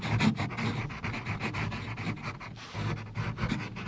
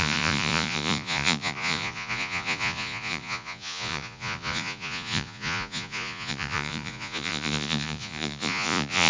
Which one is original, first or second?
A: first